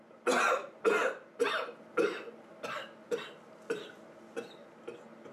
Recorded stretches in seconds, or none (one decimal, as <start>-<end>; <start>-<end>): 0.0-5.3